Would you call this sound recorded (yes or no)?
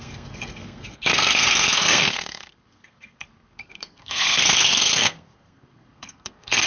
no